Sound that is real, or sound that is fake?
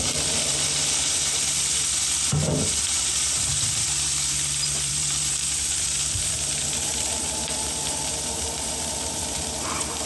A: fake